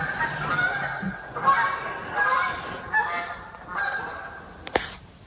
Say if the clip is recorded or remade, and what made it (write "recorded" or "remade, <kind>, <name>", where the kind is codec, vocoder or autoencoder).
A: recorded